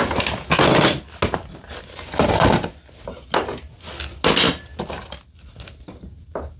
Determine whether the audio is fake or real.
real